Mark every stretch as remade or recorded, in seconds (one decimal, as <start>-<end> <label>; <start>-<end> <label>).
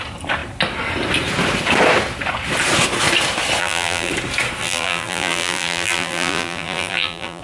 0.0-3.6 recorded; 3.6-4.1 remade; 4.1-4.6 recorded; 4.6-7.4 remade